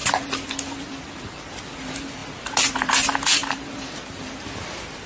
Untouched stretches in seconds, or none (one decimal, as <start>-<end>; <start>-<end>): 0.0-5.1